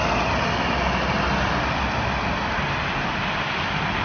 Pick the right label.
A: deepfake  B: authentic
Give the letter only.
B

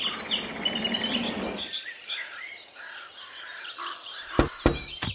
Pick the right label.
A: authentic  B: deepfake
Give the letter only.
B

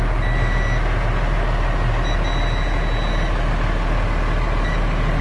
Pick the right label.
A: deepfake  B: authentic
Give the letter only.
B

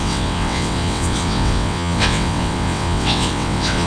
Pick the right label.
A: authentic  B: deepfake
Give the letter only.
B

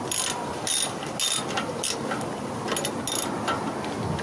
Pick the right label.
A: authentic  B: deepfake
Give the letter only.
A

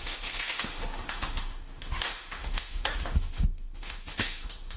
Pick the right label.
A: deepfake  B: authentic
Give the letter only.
A